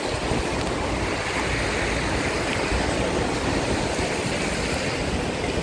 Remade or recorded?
recorded